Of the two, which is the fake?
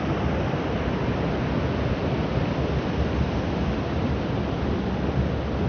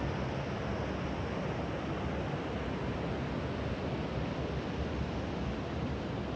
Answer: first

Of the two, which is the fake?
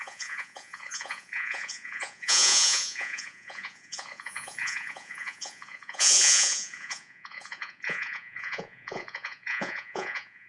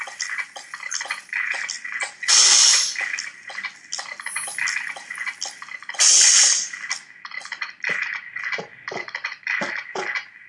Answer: first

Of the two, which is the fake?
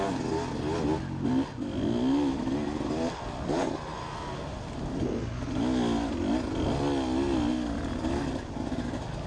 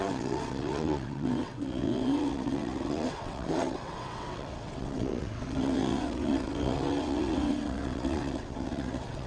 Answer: second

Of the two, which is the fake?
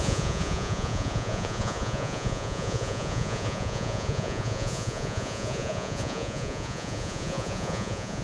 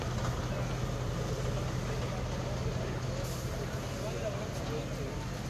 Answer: first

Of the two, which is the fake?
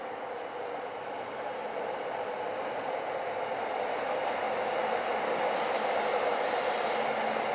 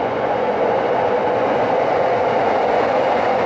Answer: second